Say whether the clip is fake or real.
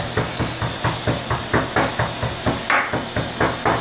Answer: real